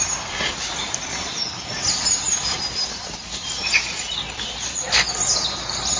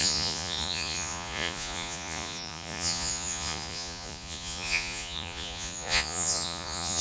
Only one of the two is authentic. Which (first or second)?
first